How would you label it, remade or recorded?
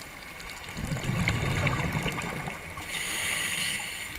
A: recorded